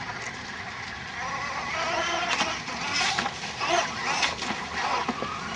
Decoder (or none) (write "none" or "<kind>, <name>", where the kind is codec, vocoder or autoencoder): none